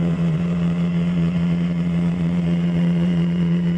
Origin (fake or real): fake